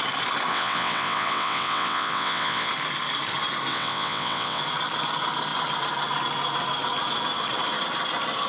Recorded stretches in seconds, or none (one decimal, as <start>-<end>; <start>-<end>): 0.0-0.5; 2.7-3.7; 4.6-8.5

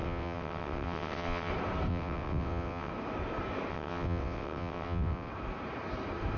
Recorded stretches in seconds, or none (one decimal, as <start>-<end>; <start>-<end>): 1.5-1.9; 2.9-3.7; 5.3-6.4

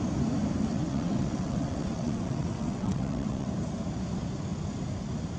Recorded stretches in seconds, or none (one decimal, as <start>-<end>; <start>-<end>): 0.0-0.7; 3.5-5.4

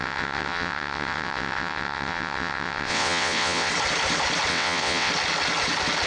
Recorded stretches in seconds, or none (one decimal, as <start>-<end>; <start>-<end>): 3.7-4.5; 5.1-6.1

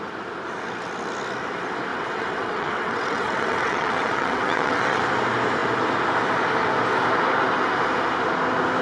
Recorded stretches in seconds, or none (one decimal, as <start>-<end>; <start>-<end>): 0.0-1.9; 5.0-8.8

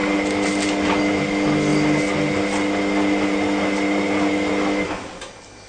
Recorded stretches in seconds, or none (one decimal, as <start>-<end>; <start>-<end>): 0.0-5.7

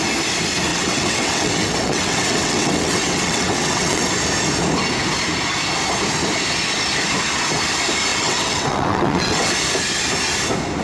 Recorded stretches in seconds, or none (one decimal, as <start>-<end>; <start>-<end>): 0.0-0.7; 4.1-8.1; 9.5-10.8

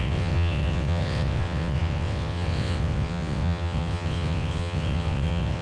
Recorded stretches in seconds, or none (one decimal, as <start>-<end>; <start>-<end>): none